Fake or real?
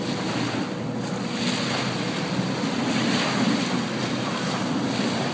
real